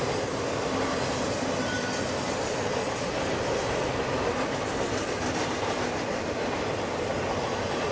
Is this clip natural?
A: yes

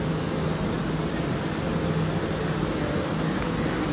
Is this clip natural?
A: yes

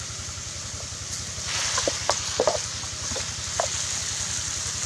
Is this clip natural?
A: yes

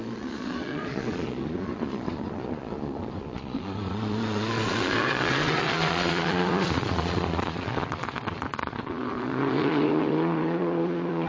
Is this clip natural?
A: no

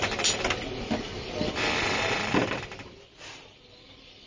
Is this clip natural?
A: no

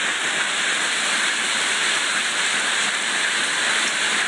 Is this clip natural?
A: yes